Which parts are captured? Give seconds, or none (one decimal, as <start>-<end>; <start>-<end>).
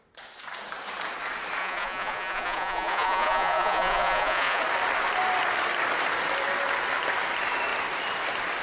0.0-1.6; 4.6-8.6